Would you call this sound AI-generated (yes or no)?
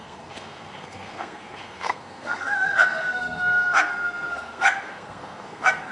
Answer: yes